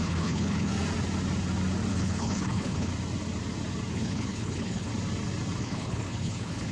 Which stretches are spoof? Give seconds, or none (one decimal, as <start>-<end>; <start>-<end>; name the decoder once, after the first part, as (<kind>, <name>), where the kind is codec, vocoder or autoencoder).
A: 0.0-0.7 (codec, HILCodec); 1.9-2.9; 3.9-4.9; 5.6-6.7